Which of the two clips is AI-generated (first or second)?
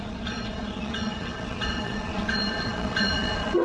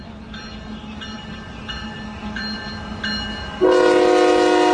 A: first